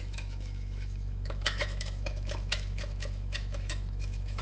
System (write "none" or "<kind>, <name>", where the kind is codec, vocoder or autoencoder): autoencoder, DAC-VAE